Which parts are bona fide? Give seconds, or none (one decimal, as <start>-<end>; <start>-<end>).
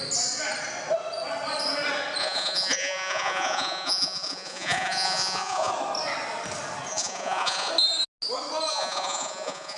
0.0-2.2; 5.7-6.9; 7.7-8.7